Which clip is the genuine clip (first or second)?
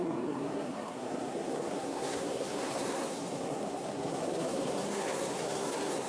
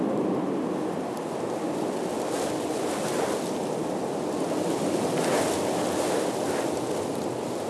second